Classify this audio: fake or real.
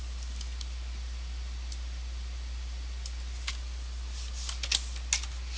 real